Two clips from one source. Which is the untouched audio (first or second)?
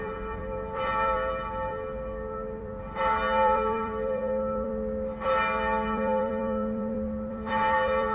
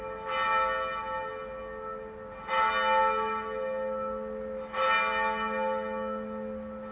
second